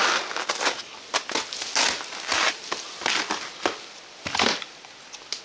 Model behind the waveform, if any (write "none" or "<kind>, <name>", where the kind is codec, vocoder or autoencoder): none